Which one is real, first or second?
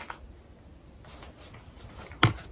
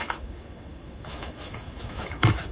first